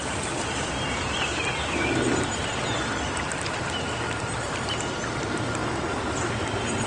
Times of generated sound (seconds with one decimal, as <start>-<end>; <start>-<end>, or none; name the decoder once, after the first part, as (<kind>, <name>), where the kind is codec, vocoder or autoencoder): none